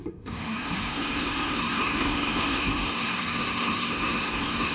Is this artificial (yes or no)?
yes